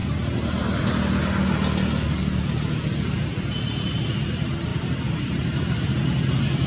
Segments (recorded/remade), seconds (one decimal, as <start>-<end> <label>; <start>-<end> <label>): 0.0-4.7 recorded; 4.7-5.6 remade; 5.6-6.7 recorded